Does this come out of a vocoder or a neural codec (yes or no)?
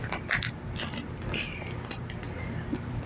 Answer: no